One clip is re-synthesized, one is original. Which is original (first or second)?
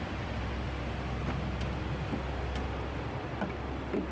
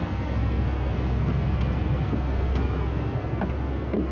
first